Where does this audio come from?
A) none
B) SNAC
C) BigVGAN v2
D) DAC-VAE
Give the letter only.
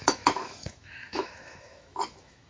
D